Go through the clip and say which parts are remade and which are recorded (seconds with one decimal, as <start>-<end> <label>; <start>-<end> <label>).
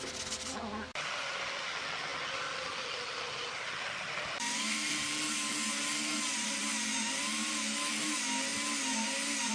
0.0-9.5 recorded